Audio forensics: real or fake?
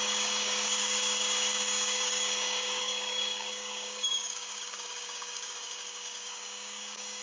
fake